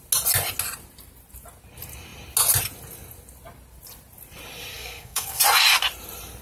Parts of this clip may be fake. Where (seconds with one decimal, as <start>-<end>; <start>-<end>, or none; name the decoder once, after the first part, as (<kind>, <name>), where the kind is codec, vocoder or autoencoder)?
4.7-5.4 (codec, SNAC)